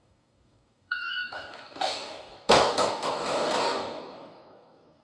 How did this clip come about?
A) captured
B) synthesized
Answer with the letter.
B